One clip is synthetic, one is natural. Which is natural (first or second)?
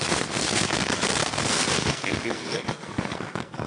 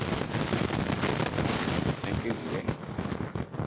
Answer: second